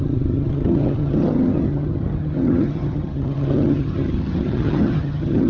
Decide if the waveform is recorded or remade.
remade